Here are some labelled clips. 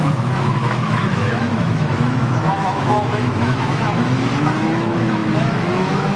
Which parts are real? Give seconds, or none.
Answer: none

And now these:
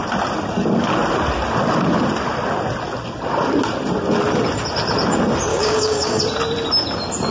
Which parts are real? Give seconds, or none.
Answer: 0.0-5.5; 6.2-7.3

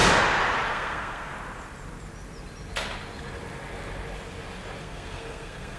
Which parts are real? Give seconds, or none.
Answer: 0.0-0.7; 1.3-4.8

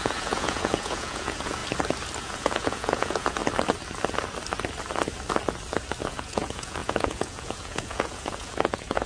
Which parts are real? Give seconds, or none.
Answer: 1.6-2.2; 3.4-6.1